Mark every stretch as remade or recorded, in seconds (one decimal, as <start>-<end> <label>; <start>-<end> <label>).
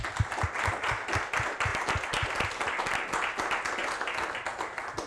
0.0-5.1 recorded